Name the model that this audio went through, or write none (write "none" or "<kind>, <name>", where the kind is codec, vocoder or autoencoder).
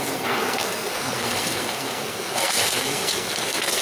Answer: codec, SNAC